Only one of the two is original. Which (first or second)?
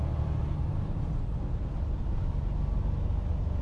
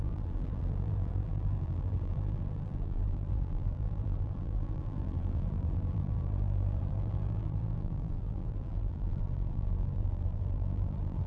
first